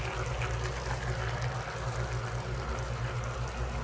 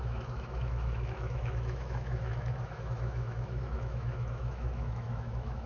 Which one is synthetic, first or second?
second